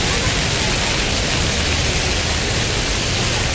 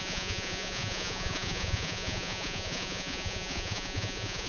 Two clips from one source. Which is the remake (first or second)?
second